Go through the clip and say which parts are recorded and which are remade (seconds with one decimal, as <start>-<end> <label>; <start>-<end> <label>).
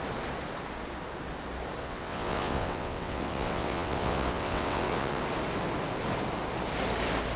0.0-1.8 recorded; 1.8-5.2 remade; 5.2-7.4 recorded